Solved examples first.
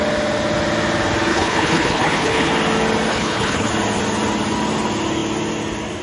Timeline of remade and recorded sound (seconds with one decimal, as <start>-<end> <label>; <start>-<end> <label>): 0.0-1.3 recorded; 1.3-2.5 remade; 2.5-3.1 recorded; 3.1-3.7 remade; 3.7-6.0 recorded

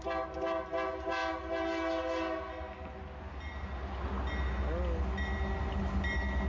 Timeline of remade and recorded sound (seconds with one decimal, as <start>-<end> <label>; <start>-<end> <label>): 0.0-6.5 recorded

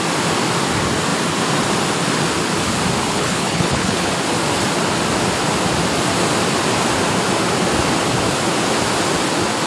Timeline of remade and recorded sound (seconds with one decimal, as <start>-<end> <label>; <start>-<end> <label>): 0.0-3.1 recorded; 3.1-4.1 remade; 4.1-9.7 recorded

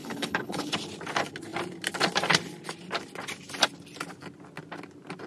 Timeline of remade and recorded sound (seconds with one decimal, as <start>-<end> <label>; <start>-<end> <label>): 0.0-0.7 remade; 0.7-5.3 recorded

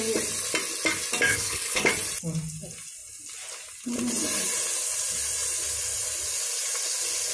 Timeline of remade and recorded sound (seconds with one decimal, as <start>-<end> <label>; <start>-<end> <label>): 0.0-1.3 recorded; 1.3-1.9 remade; 1.9-7.3 recorded

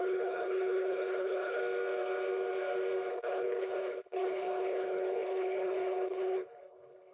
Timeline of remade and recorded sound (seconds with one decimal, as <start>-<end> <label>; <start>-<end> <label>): 0.0-1.6 remade; 1.6-3.1 recorded; 3.1-7.1 remade

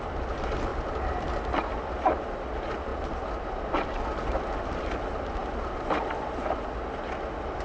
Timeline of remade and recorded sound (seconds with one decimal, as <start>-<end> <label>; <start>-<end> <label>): 0.0-7.6 recorded

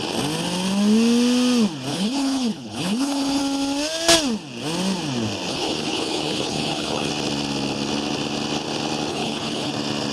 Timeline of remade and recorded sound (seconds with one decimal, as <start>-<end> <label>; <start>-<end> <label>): 0.0-1.9 recorded; 1.9-3.4 remade; 3.4-5.5 recorded; 5.5-7.1 remade; 7.1-9.1 recorded; 9.1-9.7 remade; 9.7-10.1 recorded